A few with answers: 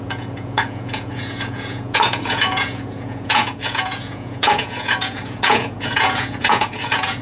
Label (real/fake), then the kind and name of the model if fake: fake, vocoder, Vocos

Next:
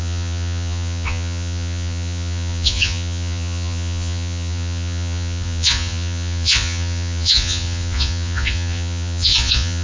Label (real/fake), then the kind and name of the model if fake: fake, vocoder, Vocos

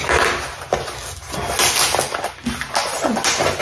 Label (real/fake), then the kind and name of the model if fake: real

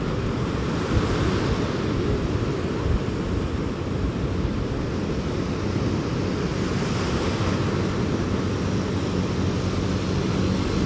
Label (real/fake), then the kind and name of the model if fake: real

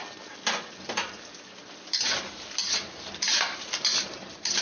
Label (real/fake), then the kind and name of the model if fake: real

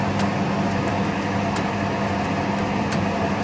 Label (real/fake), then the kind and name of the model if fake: real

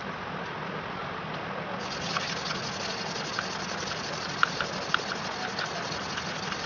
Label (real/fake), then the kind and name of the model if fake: real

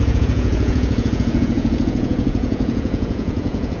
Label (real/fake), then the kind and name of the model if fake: fake, vocoder, Vocos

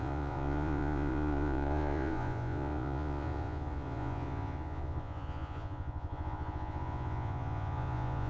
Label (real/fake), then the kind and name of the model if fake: fake, vocoder, Vocos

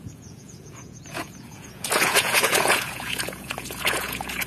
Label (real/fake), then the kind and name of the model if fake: fake, vocoder, Vocos